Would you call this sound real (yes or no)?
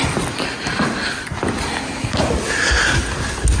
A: yes